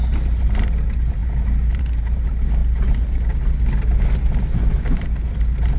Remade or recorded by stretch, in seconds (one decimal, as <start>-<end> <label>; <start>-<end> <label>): 0.0-5.8 recorded